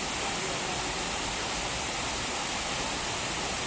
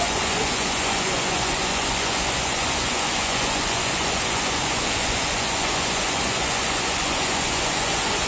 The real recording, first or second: first